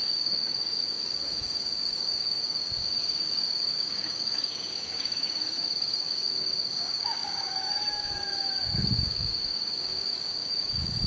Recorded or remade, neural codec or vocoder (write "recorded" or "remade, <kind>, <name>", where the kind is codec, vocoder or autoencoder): remade, codec, DAC